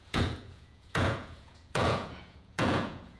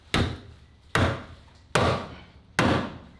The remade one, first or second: first